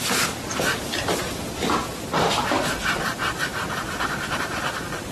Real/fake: fake